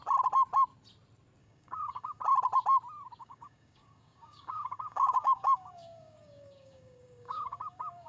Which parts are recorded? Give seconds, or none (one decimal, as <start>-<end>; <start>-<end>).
0.0-1.4; 2.2-3.2